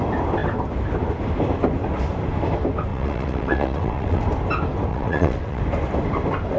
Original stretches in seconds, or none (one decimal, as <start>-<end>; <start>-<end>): 0.0-2.9; 4.2-4.9; 5.6-6.6